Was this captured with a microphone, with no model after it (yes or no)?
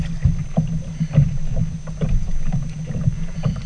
yes